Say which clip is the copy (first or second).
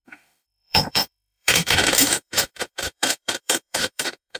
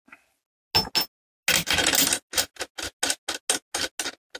first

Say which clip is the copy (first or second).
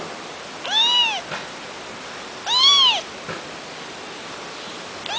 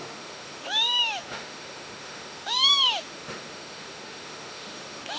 second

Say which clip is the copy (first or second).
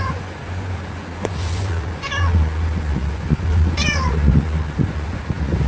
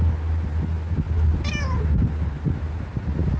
first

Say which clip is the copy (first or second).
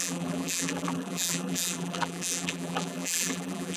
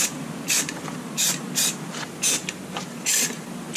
first